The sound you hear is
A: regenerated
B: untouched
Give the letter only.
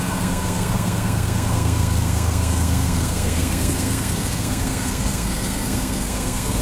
A